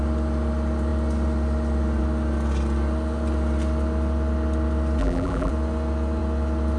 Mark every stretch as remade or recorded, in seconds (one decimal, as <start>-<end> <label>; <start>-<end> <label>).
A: 0.0-5.0 recorded; 5.0-5.5 remade; 5.5-6.8 recorded